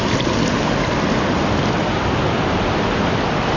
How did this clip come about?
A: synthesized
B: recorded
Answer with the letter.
B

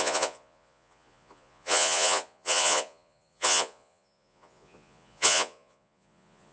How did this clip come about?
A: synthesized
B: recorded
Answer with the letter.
A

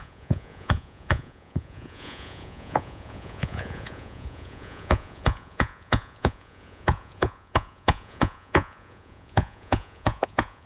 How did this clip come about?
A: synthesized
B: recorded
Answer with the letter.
A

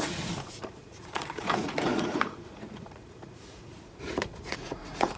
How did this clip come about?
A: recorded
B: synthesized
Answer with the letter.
B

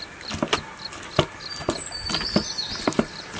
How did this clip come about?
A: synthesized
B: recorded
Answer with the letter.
B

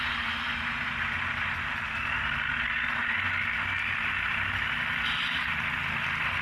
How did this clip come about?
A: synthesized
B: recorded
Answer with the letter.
B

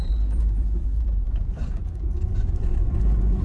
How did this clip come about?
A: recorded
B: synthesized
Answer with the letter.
B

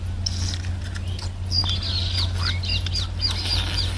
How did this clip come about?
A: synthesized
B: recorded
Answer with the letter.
B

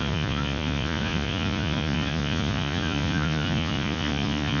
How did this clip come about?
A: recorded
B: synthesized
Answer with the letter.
B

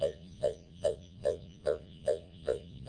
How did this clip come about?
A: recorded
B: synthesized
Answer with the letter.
B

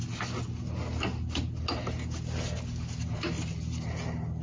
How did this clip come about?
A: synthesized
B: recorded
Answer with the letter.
B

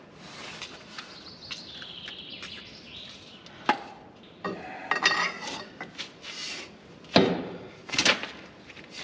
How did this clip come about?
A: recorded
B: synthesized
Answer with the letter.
A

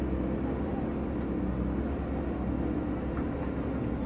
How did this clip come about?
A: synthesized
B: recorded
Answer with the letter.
B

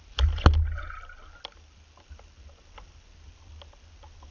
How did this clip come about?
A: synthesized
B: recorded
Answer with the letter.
B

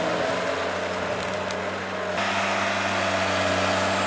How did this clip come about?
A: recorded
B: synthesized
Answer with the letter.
A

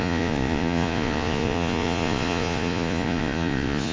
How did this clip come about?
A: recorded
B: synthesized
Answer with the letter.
B